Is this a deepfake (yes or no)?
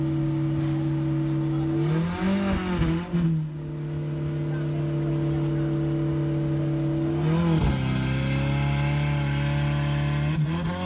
no